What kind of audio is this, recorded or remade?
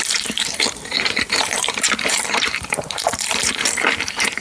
remade